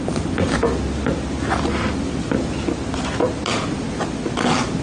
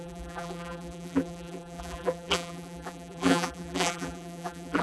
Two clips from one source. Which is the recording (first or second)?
first